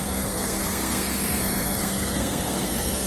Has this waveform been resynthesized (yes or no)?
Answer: yes